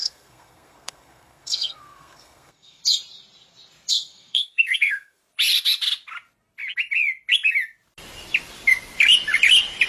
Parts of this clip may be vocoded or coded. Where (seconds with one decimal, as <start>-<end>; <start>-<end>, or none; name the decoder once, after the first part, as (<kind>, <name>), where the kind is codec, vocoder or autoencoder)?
0.0-2.8 (codec, SNAC); 3.9-5.2